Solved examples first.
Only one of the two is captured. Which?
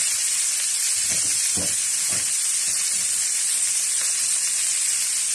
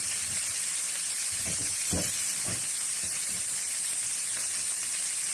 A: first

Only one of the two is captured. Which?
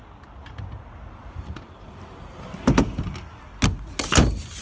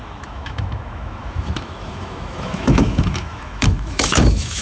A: first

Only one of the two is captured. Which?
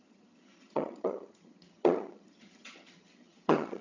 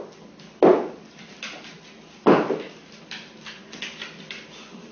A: second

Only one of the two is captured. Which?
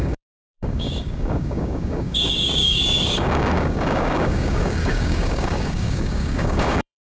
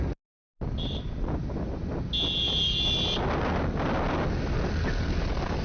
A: second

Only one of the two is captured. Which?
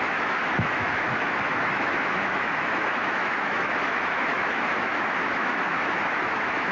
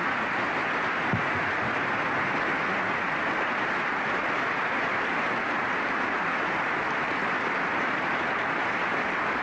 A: second